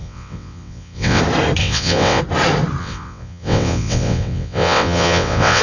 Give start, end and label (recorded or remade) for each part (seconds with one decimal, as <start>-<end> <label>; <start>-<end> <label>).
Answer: 0.0-1.2 remade; 1.2-1.6 recorded; 1.6-2.2 remade; 2.2-2.8 recorded; 2.8-5.6 remade